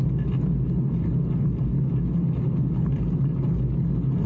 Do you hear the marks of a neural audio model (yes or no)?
no